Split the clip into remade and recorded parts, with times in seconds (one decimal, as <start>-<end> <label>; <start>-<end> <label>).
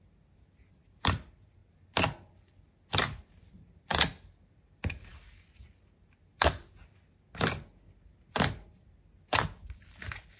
0.0-10.4 recorded